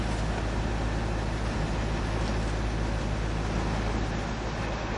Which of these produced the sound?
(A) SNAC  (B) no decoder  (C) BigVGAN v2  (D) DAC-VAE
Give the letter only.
B